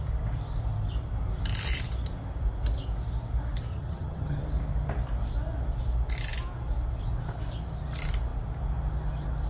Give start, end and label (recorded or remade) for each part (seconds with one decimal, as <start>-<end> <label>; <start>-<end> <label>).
0.0-3.7 recorded; 3.7-4.4 remade; 4.4-9.5 recorded